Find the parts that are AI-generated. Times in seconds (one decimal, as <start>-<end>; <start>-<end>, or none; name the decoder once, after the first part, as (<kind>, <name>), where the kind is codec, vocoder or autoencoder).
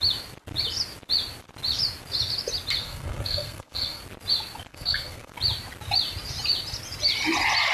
2.8-4.0 (codec, SNAC); 4.7-5.3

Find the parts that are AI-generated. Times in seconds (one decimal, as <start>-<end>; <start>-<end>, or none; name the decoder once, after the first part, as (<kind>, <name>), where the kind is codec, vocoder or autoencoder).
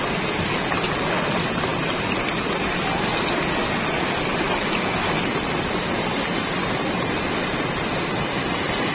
none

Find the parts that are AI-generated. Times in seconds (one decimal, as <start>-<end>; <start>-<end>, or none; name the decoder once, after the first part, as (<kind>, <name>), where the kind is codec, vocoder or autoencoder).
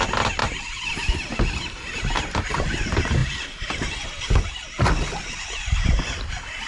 none